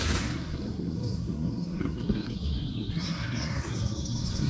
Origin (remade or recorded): remade